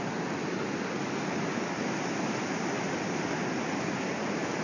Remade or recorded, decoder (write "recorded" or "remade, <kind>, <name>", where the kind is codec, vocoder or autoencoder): recorded